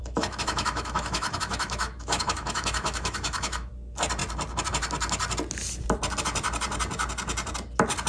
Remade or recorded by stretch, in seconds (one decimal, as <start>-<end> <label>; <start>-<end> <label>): 0.0-3.7 remade; 3.7-8.1 recorded